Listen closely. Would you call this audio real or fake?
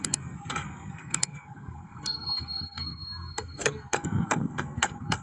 fake